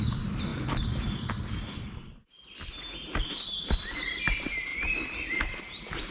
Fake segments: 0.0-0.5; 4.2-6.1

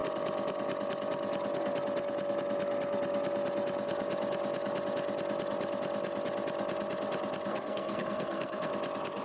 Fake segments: 7.5-8.7

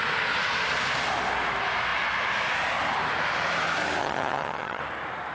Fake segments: 4.0-4.8

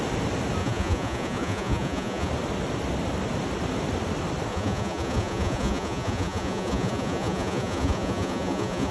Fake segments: 0.6-2.3; 4.5-8.9

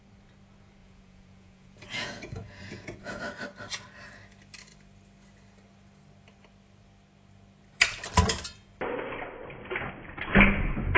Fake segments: 0.8-3.2

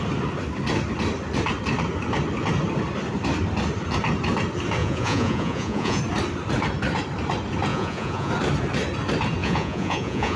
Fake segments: 4.8-6.0; 7.7-8.3; 9.4-10.4

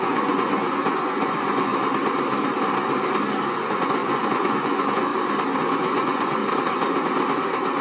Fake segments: 0.0-1.7; 3.5-5.1; 5.6-6.4

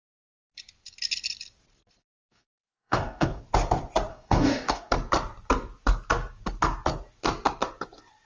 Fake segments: 2.0-3.4; 4.1-4.9